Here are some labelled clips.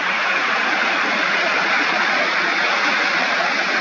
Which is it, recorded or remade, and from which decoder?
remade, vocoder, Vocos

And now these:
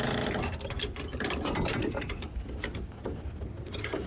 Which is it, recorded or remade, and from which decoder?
recorded